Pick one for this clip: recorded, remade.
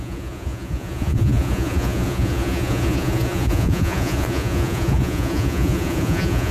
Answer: remade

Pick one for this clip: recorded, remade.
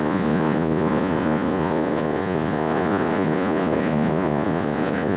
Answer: remade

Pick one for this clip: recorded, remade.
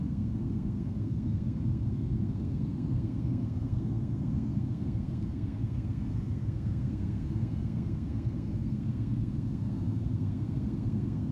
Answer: remade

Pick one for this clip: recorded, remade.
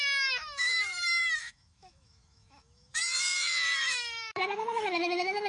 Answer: remade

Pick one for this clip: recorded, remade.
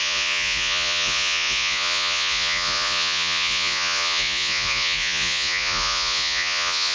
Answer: remade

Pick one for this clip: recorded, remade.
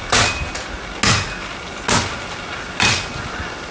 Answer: recorded